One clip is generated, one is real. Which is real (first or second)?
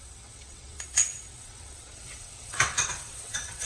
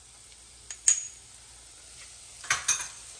second